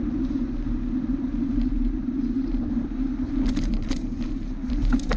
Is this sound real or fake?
fake